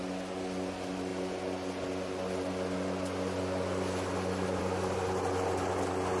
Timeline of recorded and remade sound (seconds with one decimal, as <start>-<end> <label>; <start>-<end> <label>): 0.0-6.2 recorded